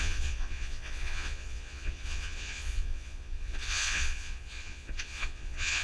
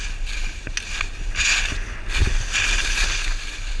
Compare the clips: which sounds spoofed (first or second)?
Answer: first